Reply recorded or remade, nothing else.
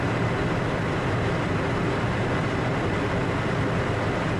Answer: recorded